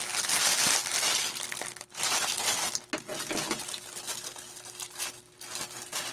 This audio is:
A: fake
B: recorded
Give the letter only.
B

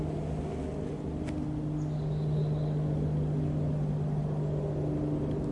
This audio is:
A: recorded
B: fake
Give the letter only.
A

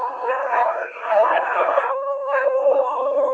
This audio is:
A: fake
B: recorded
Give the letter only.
A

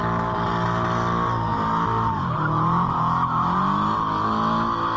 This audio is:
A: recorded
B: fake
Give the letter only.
A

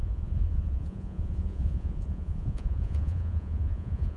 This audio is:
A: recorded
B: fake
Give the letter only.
B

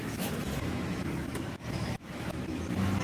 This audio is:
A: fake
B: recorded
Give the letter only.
A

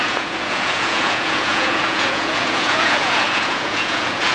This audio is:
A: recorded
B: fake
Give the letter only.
B